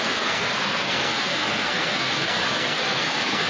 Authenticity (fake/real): fake